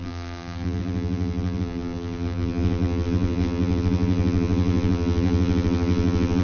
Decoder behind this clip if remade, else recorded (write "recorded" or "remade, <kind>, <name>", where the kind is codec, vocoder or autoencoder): remade, vocoder, BigVGAN v2